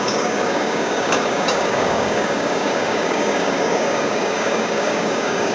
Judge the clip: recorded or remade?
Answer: remade